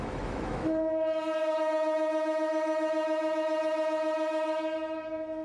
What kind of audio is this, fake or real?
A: fake